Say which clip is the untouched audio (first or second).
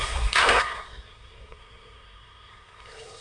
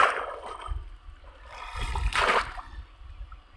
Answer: second